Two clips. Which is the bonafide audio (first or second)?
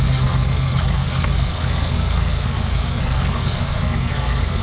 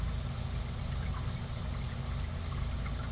second